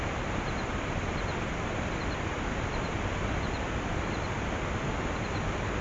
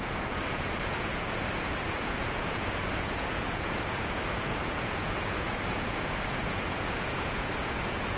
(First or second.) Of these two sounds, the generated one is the second